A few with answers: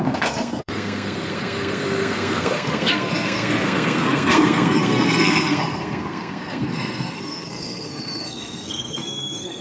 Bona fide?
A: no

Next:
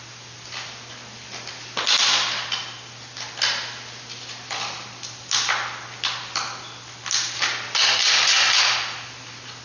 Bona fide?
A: yes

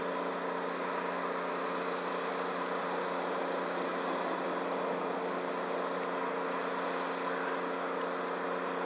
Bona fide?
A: yes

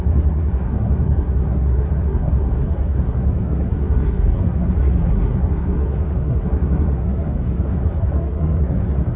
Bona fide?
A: no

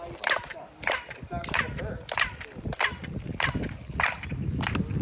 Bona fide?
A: yes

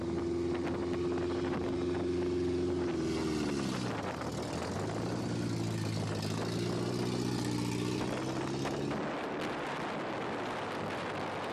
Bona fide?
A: yes